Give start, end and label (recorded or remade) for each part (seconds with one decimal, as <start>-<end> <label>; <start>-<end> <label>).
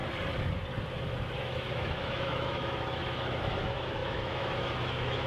0.0-1.4 recorded; 1.4-5.3 remade